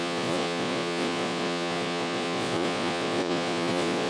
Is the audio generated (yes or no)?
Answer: yes